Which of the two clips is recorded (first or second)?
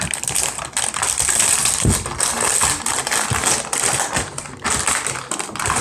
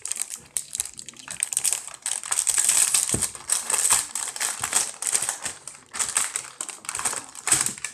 first